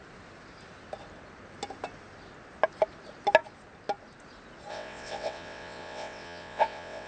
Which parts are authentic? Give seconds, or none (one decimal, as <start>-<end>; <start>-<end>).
0.0-4.7